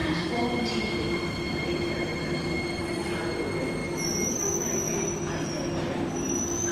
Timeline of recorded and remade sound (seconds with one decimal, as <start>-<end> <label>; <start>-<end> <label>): 0.0-0.6 remade; 0.6-2.1 recorded; 2.1-2.9 remade; 2.9-6.7 recorded